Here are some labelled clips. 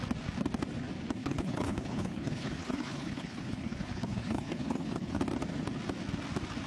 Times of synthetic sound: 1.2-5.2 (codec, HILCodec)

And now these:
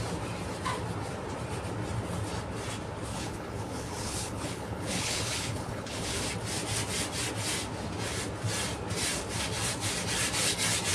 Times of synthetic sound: 3.1-6.2 (codec, HILCodec)

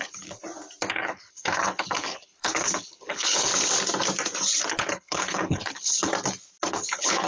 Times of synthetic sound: 0.0-0.4 (codec, HILCodec); 0.9-3.5; 4.7-6.1; 6.7-7.3

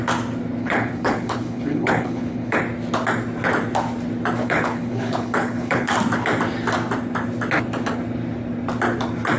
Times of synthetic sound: 0.6-2.6 (codec, HILCodec); 4.4-5.9